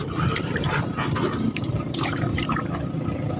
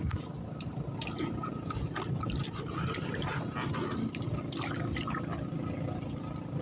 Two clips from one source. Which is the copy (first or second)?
first